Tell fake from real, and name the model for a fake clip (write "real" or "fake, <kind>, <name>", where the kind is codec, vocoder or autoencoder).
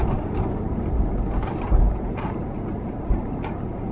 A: fake, vocoder, BigVGAN v2